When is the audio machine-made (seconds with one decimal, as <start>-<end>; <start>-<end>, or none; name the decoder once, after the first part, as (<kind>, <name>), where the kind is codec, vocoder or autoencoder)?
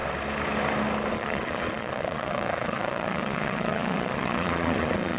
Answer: 1.1-5.2 (vocoder, Vocos)